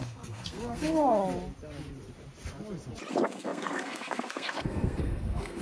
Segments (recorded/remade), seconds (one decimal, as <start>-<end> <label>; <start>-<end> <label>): 0.0-1.2 remade; 1.2-3.1 recorded; 3.1-5.6 remade

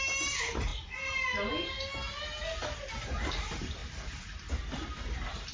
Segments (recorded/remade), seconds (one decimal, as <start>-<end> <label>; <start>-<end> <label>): 0.0-0.7 remade; 0.7-2.9 recorded; 2.9-5.5 remade

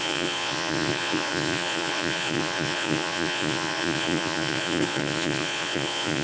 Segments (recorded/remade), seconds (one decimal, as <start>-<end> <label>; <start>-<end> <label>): 0.0-6.2 remade

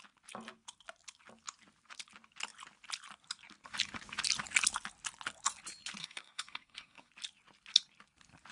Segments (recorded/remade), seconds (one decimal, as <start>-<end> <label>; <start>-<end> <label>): 0.0-6.0 recorded; 6.0-7.1 remade; 7.1-8.5 recorded

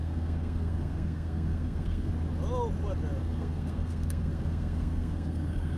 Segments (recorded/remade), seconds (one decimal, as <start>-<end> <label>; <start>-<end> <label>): 0.0-2.1 remade; 2.1-3.2 recorded; 3.2-5.8 remade